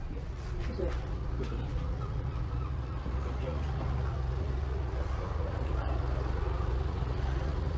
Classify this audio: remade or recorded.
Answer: remade